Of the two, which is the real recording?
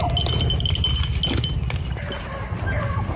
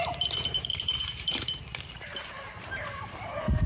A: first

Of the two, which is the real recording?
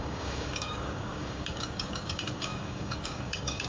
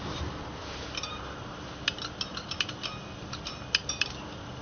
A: second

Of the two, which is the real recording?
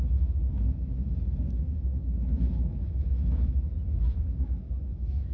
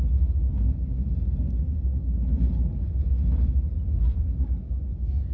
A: second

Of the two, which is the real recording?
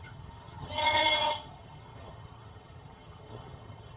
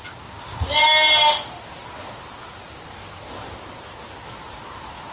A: second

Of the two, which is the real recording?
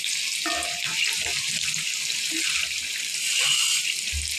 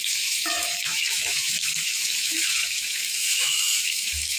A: first